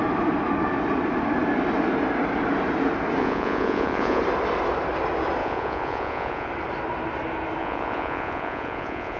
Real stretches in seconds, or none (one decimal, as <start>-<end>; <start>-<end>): 0.0-3.2; 4.2-5.4; 6.5-7.6

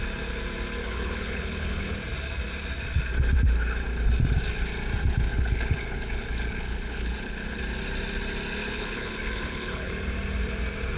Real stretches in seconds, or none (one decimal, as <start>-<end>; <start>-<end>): 0.0-0.8; 1.9-5.3; 7.6-8.6; 9.9-11.0